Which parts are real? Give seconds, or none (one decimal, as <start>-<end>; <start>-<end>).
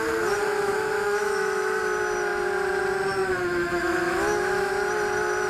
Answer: 0.0-0.5; 1.8-3.2; 4.7-5.5